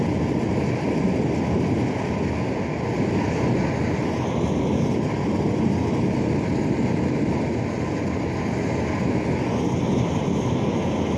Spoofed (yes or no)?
no